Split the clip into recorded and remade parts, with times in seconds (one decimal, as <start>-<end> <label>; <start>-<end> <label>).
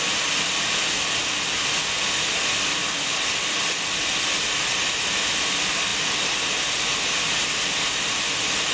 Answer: 0.0-8.7 recorded